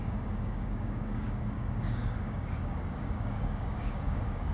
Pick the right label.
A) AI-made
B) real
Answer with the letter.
A